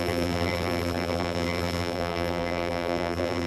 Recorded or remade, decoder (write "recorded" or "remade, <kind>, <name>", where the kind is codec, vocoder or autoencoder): remade, vocoder, BigVGAN v2